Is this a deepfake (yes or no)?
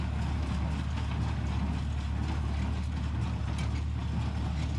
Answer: no